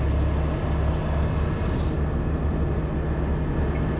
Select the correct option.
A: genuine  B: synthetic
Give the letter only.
A